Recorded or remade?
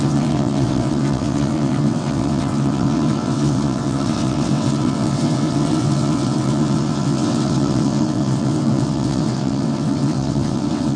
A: remade